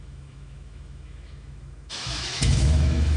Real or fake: fake